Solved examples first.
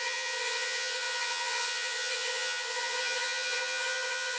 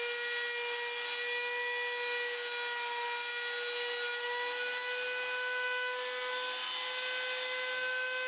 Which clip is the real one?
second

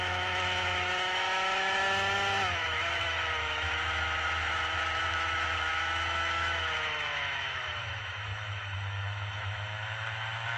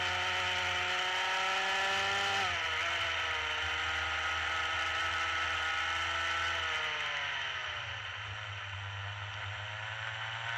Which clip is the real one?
second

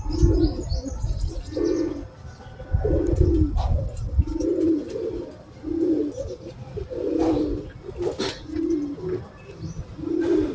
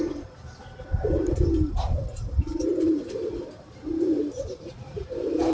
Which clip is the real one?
first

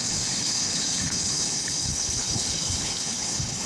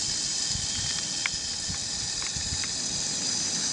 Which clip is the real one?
second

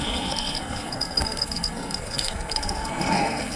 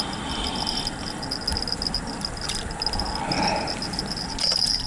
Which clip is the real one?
second